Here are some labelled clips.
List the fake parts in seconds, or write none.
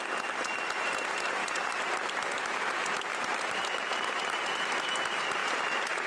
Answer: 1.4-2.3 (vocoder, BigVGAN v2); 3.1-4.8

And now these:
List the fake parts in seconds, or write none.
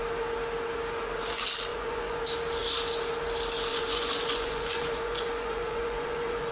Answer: 1.7-2.2 (vocoder, Vocos); 3.7-6.5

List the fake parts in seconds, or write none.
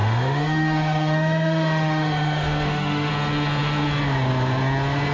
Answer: 0.0-3.1 (autoencoder, DAC-VAE)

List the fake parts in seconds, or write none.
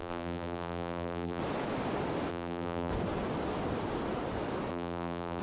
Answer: 0.0-1.4 (vocoder, BigVGAN v2); 2.3-2.9; 4.7-5.4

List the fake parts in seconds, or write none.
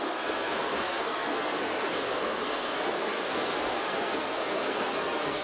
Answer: 0.0-5.4 (codec, SNAC)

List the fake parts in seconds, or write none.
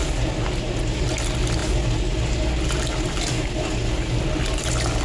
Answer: none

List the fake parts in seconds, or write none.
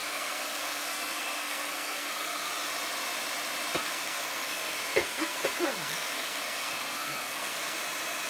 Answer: 0.0-2.5 (codec, SNAC); 3.8-7.8